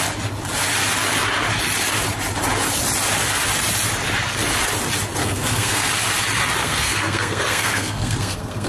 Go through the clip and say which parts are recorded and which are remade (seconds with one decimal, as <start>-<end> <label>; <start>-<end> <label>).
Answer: 0.0-5.2 recorded; 5.2-5.9 remade; 5.9-6.6 recorded; 6.6-8.7 remade